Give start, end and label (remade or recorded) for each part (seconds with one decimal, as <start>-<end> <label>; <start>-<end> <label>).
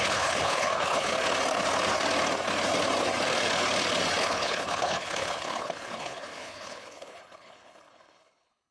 0.0-1.1 remade; 1.1-4.2 recorded; 4.2-8.7 remade